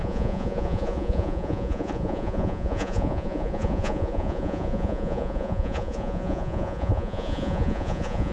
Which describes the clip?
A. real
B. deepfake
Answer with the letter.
B